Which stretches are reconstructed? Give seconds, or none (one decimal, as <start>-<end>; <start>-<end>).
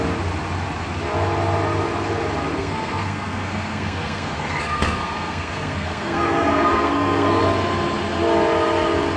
2.6-7.4